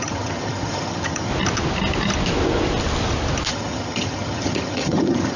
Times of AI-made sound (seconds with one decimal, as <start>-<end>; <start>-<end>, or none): 0.0-1.3; 3.5-5.4